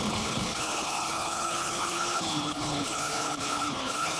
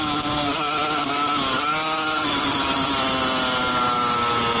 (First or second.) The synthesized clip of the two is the first